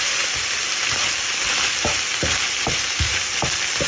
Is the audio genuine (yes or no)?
yes